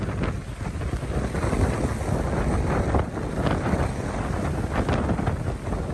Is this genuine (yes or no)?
yes